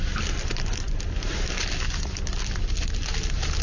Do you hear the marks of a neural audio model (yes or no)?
no